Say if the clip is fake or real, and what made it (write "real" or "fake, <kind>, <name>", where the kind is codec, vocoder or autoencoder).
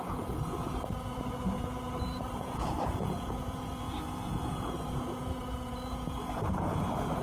fake, vocoder, Vocos